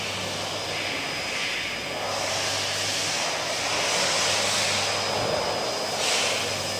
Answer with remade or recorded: recorded